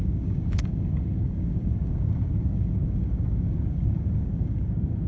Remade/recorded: remade